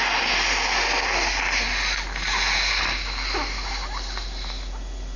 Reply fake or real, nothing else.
real